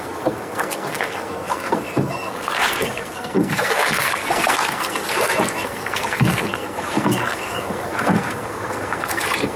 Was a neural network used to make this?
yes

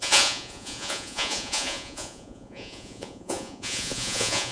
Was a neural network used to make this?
yes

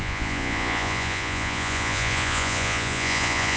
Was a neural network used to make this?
yes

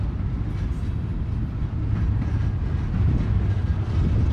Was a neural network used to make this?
no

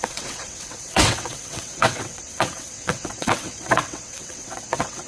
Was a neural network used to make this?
yes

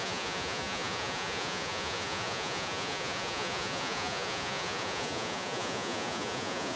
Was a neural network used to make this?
yes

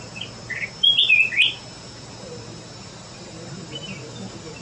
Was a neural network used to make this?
no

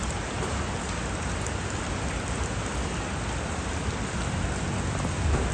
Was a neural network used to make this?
no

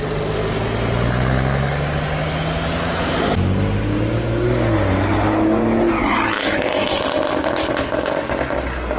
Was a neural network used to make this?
no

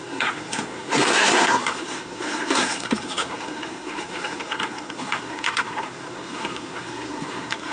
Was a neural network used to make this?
yes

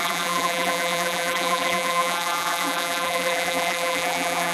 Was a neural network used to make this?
yes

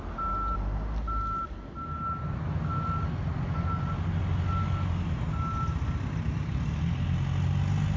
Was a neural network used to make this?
no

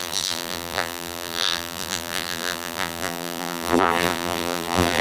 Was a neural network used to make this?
yes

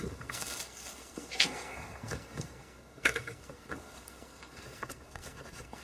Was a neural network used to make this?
yes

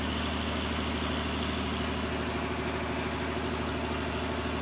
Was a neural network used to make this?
no